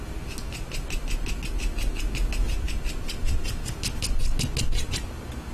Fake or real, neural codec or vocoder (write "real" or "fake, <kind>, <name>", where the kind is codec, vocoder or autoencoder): real